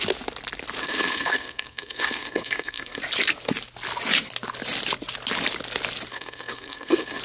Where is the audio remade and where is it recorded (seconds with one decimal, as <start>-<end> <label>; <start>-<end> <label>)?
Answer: 0.0-0.8 recorded; 0.8-3.0 remade; 3.0-6.1 recorded; 6.1-7.2 remade